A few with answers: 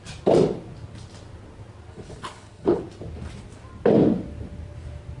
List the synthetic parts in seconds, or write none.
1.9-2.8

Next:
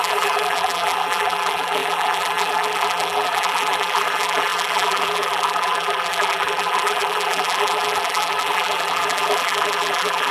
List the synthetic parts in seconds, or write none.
0.0-10.3

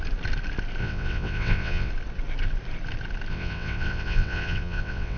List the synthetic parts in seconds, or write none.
0.8-1.9; 3.3-5.2

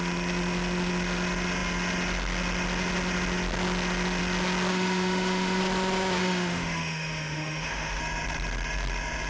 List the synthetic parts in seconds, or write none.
4.7-5.6; 6.2-8.0